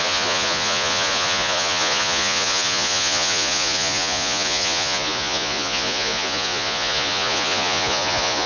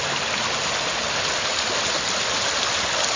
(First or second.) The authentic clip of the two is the second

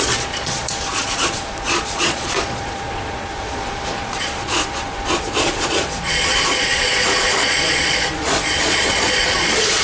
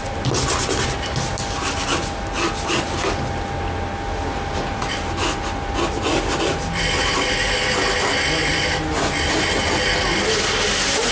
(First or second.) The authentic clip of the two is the second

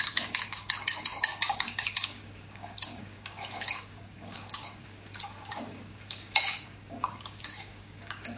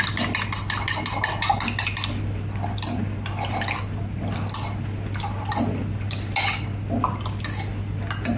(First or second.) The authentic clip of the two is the second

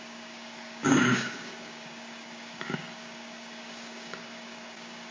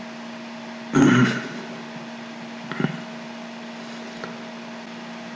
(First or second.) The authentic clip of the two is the second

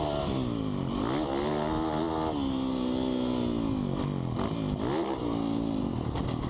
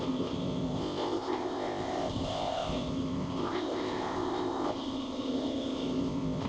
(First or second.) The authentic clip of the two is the first